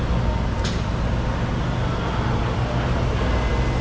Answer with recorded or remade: recorded